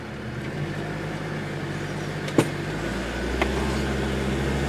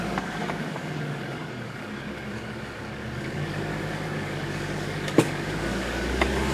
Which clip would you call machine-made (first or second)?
second